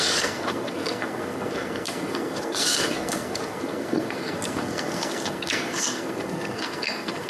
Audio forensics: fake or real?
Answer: fake